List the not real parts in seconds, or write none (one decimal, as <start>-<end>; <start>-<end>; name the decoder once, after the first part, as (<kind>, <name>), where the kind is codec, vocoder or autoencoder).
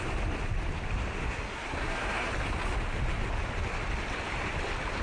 1.2-2.3 (codec, SNAC)